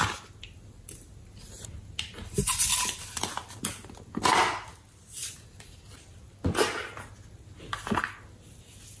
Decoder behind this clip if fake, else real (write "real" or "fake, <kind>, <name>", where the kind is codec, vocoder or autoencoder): real